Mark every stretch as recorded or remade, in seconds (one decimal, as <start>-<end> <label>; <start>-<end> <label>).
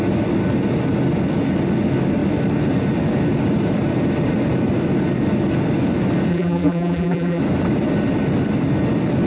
0.0-6.3 recorded; 6.3-7.4 remade; 7.4-9.3 recorded